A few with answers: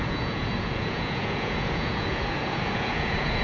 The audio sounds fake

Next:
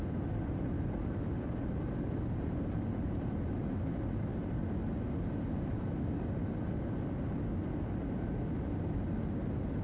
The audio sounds real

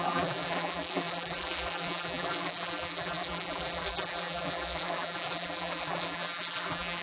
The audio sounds fake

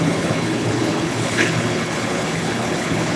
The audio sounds fake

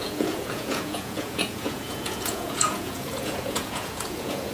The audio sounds fake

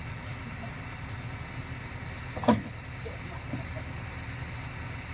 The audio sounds real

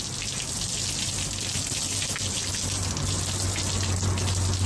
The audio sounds real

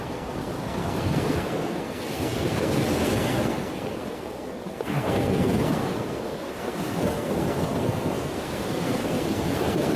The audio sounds fake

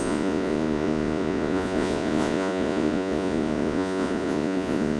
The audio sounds fake